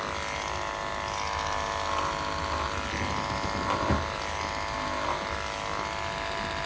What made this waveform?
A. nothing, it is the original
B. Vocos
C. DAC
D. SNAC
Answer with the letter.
A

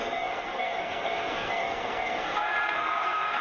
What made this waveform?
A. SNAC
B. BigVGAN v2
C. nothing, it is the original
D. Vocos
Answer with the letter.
A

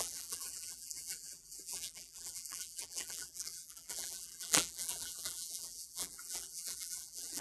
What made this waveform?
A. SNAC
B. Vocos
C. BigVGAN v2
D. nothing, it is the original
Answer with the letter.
C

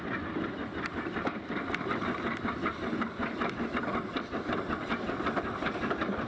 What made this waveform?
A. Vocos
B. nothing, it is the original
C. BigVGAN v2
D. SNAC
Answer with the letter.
B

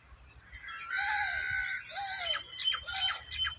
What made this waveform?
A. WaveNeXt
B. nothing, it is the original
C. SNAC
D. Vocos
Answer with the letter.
B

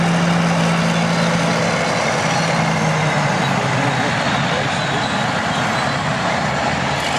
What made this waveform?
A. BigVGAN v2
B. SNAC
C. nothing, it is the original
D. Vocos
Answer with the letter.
C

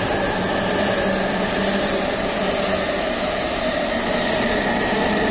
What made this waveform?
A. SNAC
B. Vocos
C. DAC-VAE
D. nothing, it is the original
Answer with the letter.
D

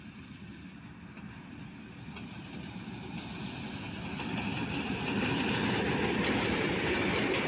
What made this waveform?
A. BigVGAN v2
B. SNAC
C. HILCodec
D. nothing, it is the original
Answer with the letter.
D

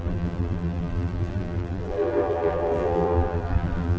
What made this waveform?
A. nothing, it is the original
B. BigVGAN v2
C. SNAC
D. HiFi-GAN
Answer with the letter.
B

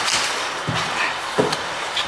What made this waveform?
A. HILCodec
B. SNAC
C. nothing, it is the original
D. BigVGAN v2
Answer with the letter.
C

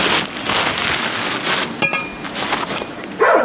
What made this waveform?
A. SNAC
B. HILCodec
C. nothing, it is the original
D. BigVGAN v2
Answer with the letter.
C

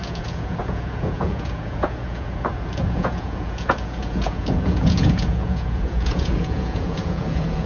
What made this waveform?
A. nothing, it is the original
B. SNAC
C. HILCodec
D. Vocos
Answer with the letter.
D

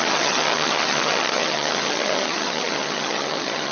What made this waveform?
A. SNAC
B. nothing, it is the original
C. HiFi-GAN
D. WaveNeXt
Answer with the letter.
C